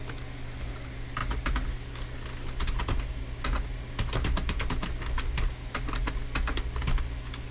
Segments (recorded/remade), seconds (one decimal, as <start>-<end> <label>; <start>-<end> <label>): 0.0-7.5 recorded

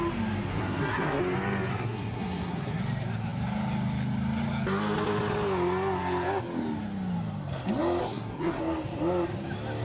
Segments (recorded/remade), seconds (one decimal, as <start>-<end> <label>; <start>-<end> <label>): 0.0-0.5 recorded; 0.5-1.2 remade; 1.2-1.7 recorded; 1.7-2.8 remade; 2.8-8.0 recorded; 8.0-8.6 remade; 8.6-9.8 recorded

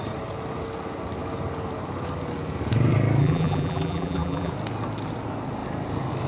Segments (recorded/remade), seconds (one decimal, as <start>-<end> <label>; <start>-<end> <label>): 0.0-3.2 recorded; 3.2-4.5 remade; 4.5-6.3 recorded